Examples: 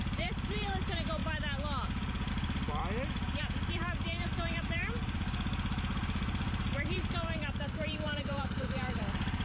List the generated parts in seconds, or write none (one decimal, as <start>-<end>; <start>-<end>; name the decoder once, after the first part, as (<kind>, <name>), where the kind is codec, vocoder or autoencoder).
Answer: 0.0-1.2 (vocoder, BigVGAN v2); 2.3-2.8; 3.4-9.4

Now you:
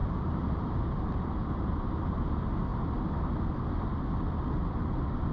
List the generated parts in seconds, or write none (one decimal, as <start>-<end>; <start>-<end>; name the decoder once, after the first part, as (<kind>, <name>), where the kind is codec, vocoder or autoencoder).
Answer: 0.0-2.7 (vocoder, BigVGAN v2)

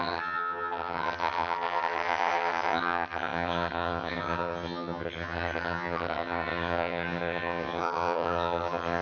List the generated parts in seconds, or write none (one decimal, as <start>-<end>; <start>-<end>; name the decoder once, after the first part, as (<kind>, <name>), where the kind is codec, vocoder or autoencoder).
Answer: 0.0-9.0 (vocoder, HiFi-GAN)

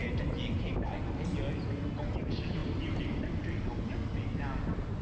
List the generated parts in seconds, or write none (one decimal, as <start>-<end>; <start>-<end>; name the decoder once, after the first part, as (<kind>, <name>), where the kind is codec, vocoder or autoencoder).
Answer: 2.6-3.6 (vocoder, BigVGAN v2)

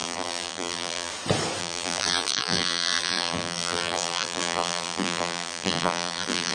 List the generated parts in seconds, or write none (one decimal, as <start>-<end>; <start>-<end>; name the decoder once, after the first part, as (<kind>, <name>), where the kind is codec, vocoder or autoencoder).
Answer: 0.0-1.1 (vocoder, BigVGAN v2); 1.6-6.5

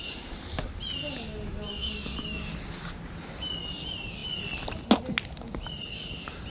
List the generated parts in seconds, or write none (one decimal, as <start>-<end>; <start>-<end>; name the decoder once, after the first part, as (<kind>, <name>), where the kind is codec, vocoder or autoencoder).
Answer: 1.5-2.5 (codec, DAC)

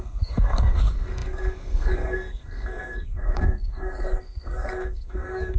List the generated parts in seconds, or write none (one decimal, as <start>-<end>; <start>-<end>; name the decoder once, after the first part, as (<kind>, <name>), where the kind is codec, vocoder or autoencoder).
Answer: 0.0-5.6 (codec, SNAC)